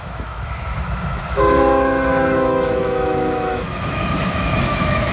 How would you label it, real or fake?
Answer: fake